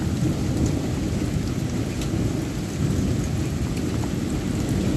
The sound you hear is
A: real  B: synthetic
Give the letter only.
A